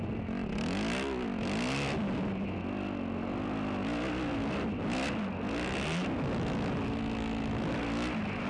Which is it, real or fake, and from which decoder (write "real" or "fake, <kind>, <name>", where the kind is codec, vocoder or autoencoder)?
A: real